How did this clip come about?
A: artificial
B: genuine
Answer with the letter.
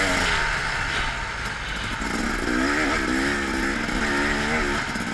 B